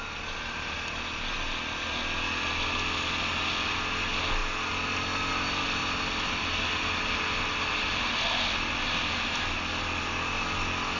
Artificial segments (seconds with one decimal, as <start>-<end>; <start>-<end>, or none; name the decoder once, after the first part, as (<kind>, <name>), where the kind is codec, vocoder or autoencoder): none